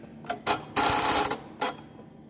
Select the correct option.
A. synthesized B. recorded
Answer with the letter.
B